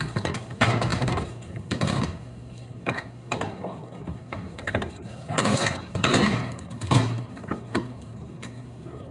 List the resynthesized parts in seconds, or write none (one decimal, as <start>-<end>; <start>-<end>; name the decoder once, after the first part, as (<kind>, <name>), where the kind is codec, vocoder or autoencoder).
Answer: 0.0-9.1 (codec, SNAC)